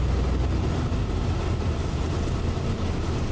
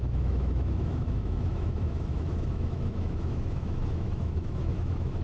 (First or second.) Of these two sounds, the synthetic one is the second